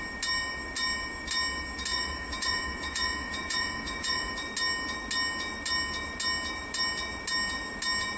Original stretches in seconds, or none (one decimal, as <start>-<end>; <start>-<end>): 0.0-1.9; 4.3-8.2